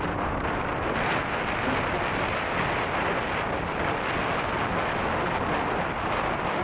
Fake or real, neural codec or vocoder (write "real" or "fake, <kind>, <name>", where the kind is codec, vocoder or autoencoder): real